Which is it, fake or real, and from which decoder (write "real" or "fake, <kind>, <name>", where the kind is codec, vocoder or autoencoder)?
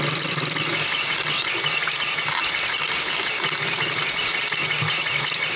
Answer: real